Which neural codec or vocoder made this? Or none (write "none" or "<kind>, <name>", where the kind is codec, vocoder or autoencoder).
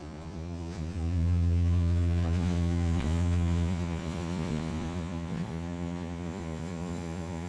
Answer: vocoder, Vocos